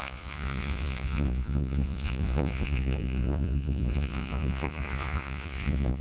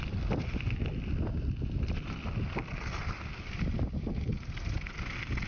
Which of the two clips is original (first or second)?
second